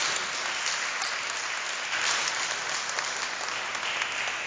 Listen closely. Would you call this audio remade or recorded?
recorded